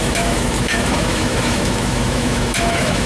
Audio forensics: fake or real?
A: fake